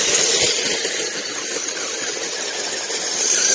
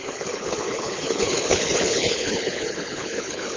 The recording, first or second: first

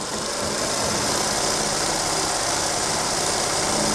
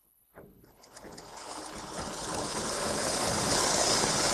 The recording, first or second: first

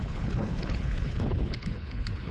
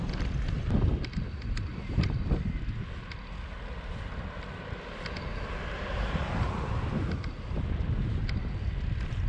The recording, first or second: second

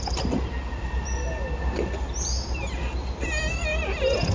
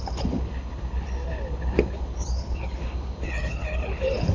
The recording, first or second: first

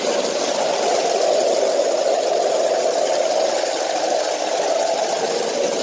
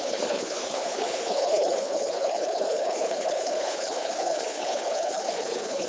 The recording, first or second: first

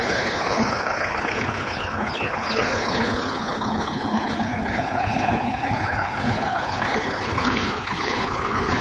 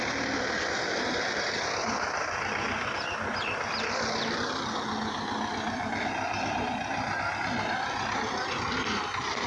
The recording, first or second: second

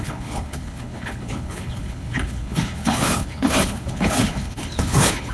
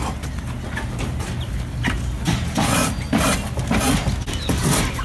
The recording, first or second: second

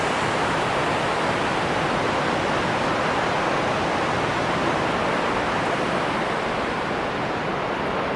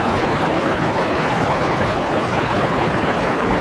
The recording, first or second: first